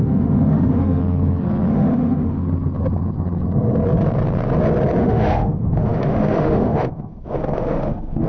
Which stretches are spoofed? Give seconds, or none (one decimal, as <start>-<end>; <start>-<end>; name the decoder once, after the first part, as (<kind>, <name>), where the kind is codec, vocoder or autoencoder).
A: 0.0-1.0 (autoencoder, DAC-VAE); 1.7-2.4; 5.0-8.3